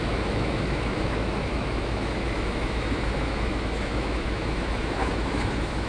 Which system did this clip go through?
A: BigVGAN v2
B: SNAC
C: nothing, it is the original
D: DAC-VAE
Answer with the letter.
D